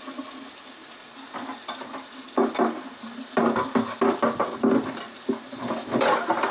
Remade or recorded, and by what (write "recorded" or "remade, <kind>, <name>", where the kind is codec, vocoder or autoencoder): recorded